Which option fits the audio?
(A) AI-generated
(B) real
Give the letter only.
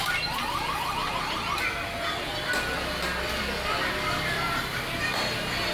B